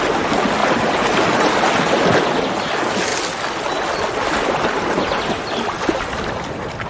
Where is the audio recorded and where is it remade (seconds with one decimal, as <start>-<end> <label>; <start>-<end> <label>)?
0.0-6.9 recorded